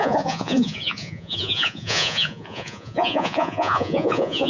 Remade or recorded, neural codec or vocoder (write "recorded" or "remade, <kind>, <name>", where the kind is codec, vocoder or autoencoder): remade, vocoder, Vocos